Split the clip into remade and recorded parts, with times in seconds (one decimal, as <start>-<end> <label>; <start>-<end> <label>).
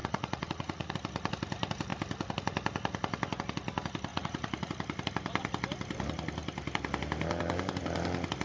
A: 0.0-0.9 remade; 0.9-4.1 recorded; 4.1-4.7 remade; 4.7-8.4 recorded